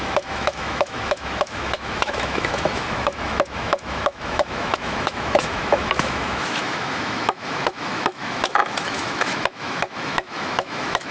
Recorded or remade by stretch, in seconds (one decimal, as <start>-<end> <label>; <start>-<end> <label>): 0.0-11.1 remade